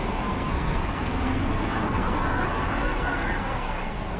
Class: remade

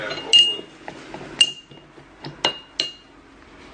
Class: recorded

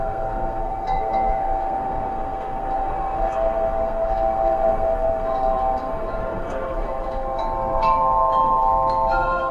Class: remade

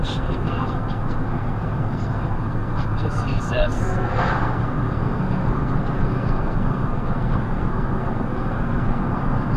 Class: remade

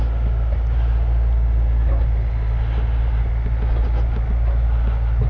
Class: recorded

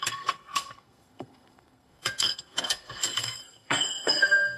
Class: remade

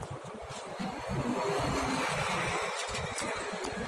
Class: recorded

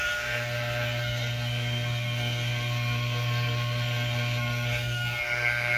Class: remade